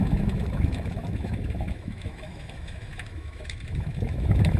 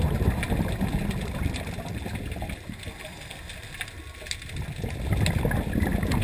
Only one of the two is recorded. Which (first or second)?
second